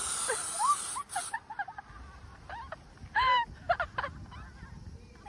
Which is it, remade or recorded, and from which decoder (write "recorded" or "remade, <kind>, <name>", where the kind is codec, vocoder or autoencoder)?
recorded